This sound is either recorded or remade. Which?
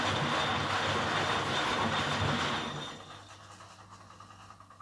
recorded